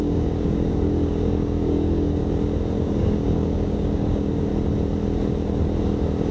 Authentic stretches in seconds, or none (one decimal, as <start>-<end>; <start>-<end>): 2.2-2.8; 4.5-6.3